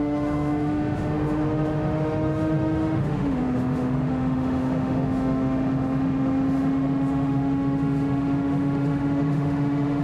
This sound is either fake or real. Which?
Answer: fake